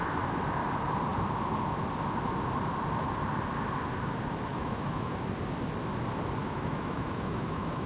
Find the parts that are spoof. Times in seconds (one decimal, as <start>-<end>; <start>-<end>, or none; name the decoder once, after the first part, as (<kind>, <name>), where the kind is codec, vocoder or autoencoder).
4.5-5.2 (autoencoder, DAC-VAE); 6.4-7.9